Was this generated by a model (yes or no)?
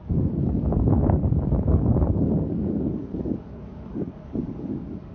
yes